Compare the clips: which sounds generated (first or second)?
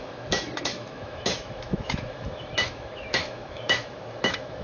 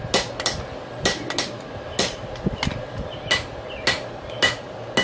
first